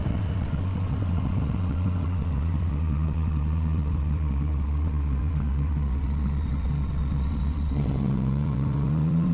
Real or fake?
fake